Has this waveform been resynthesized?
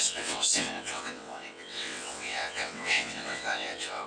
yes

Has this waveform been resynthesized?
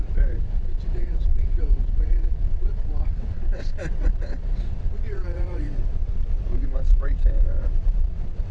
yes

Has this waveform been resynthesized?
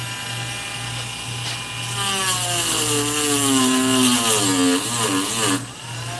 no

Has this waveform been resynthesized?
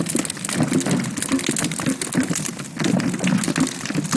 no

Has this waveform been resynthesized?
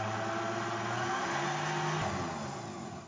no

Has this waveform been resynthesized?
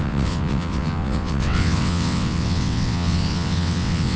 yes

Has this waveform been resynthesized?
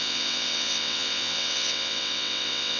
yes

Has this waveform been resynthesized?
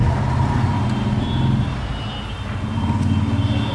no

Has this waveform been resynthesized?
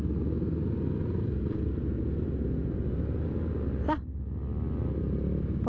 no